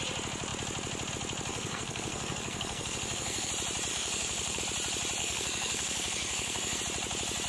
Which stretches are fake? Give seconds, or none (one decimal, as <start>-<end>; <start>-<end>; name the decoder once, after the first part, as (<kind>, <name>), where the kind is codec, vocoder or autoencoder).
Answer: 1.5-3.5 (codec, SNAC); 3.9-4.6; 5.2-6.8